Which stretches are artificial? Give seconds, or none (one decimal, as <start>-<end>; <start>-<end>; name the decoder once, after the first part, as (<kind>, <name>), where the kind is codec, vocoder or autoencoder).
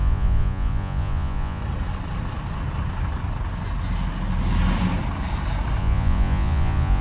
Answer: 0.0-1.6 (vocoder, Vocos); 5.8-7.0